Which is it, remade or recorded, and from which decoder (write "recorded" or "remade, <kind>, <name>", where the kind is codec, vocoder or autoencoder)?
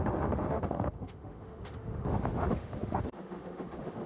remade, autoencoder, DAC-VAE